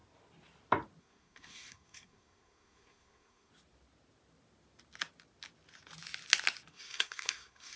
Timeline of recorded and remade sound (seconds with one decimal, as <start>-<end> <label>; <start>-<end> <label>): 0.0-1.0 recorded; 1.0-3.5 remade; 3.5-6.7 recorded; 6.7-7.8 remade